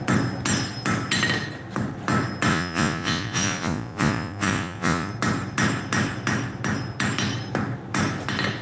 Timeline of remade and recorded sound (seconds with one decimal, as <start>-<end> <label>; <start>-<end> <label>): 0.0-2.5 recorded; 2.5-5.1 remade; 5.1-8.6 recorded